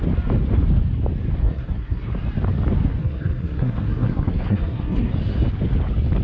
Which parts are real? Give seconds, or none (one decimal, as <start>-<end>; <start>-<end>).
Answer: 0.0-1.4; 2.1-3.0; 5.1-6.2